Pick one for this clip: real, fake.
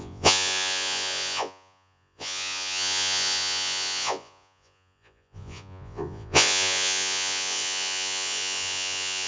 fake